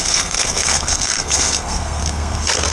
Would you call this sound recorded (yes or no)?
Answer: no